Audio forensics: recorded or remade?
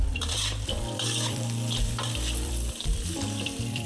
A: remade